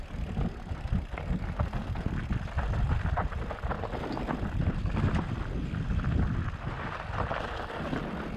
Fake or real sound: real